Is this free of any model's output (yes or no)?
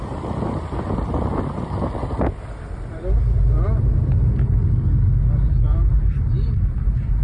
yes